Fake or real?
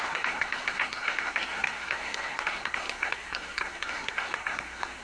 fake